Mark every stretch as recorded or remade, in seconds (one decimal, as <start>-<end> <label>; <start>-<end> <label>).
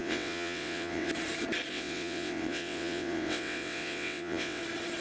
0.0-1.1 remade; 1.1-1.7 recorded; 1.7-4.6 remade; 4.6-5.0 recorded